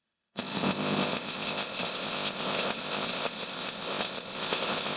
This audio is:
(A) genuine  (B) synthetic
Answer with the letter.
B